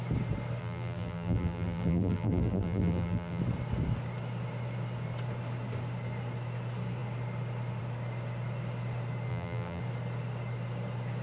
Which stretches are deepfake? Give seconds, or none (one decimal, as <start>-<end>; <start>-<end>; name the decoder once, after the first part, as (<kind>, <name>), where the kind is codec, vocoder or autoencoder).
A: 0.6-3.4 (vocoder, BigVGAN v2); 9.3-9.8